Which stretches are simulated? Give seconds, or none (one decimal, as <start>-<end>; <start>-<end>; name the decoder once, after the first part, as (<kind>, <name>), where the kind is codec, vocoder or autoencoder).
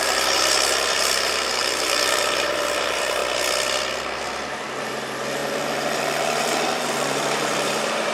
0.0-3.2 (vocoder, BigVGAN v2); 4.8-8.1